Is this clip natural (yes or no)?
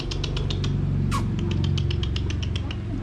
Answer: yes